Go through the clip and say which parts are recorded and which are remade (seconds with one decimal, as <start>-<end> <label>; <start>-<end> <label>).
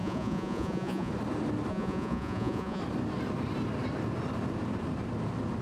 0.0-1.1 remade; 1.1-1.7 recorded; 1.7-2.8 remade; 2.8-5.6 recorded